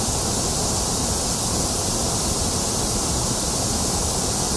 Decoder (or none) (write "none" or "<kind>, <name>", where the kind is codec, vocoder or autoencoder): none